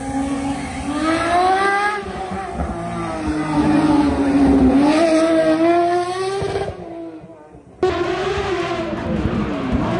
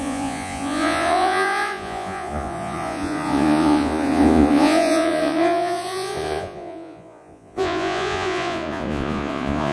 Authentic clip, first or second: first